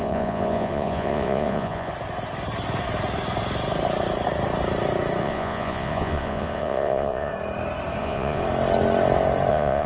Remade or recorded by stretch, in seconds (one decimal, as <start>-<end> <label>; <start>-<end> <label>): 0.0-1.9 remade; 1.9-5.2 recorded; 5.2-7.3 remade; 7.3-8.0 recorded; 8.0-8.4 remade; 8.4-9.5 recorded; 9.5-9.9 remade

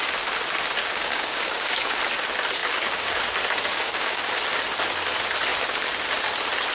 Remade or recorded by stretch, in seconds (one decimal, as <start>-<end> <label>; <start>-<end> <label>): 0.0-0.8 recorded; 0.8-2.0 remade; 2.0-2.6 recorded; 2.6-3.2 remade; 3.2-3.7 recorded; 3.7-4.2 remade; 4.2-6.7 recorded

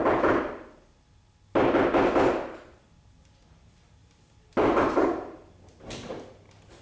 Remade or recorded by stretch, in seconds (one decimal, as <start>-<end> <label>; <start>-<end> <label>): 0.0-6.8 recorded

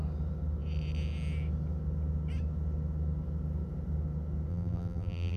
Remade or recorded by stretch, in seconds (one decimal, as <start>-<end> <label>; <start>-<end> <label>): 0.0-4.5 recorded; 4.5-5.4 remade

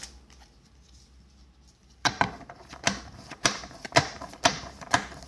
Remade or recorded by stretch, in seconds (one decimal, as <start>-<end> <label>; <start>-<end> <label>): 0.0-1.8 recorded; 1.8-5.3 remade

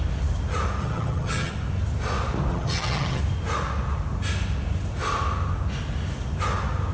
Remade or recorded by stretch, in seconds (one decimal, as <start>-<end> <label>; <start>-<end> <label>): 0.0-0.8 recorded; 0.8-1.5 remade; 1.5-2.5 recorded; 2.5-3.2 remade; 3.2-6.9 recorded

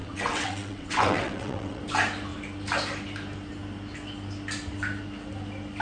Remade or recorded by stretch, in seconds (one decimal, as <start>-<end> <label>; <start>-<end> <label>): 0.0-1.8 remade; 1.8-5.8 recorded